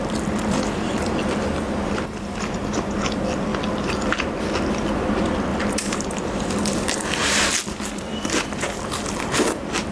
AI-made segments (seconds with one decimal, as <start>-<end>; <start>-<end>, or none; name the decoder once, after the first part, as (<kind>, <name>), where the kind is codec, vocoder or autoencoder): 5.5-6.4 (vocoder, BigVGAN v2); 8.1-8.8